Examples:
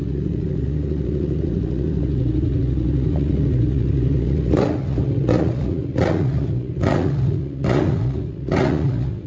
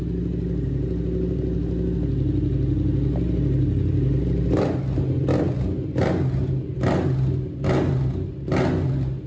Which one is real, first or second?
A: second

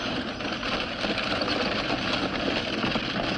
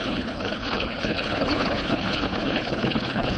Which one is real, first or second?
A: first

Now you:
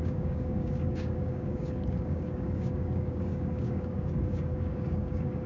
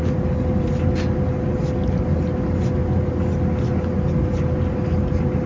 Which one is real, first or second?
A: second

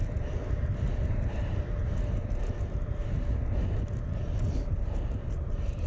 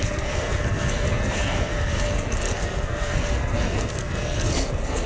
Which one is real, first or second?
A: first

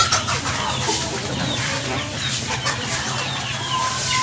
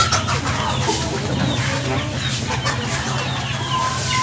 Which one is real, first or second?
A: second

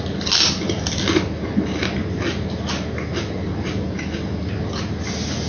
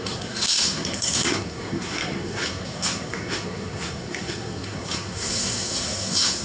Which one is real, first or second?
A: first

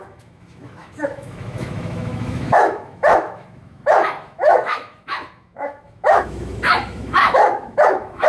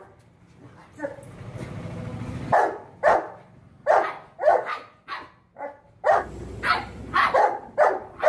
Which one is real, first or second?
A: second